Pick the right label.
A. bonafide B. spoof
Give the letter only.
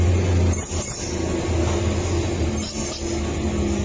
A